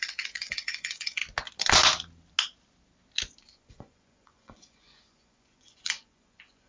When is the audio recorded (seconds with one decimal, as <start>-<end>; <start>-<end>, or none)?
1.2-3.4